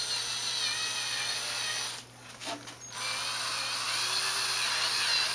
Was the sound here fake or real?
real